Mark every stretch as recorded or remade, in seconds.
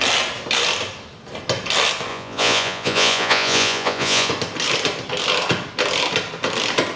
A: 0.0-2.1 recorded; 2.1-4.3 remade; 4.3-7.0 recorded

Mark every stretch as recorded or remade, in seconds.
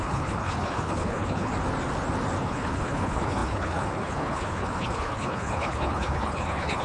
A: 0.0-1.5 remade; 1.5-2.4 recorded; 2.4-6.8 remade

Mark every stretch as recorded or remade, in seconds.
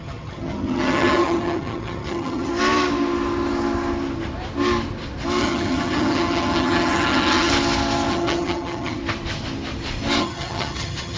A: 0.0-2.5 remade; 2.5-5.4 recorded; 5.4-7.5 remade; 7.5-8.1 recorded; 8.1-9.0 remade; 9.0-10.2 recorded; 10.2-11.2 remade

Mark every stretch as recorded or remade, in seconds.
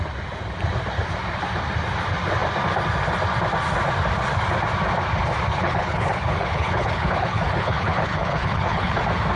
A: 0.0-5.5 recorded; 5.5-9.0 remade; 9.0-9.4 recorded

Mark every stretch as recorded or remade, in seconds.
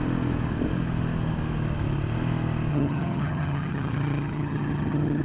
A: 0.0-2.7 recorded; 2.7-5.2 remade